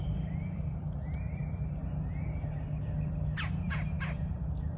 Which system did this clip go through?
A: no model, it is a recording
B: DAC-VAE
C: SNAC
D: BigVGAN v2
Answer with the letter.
A